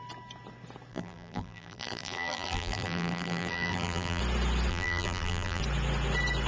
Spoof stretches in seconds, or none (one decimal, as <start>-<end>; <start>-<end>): 0.9-4.2; 4.7-5.6